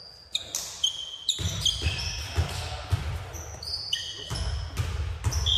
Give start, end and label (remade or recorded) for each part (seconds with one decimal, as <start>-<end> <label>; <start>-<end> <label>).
0.0-5.6 recorded